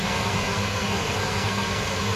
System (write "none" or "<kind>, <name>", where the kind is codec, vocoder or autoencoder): codec, SNAC